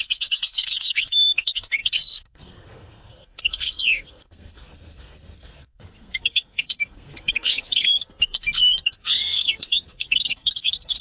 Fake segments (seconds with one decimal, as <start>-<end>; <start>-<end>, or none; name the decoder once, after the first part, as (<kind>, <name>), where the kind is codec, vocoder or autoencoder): 0.0-11.0 (codec, SNAC)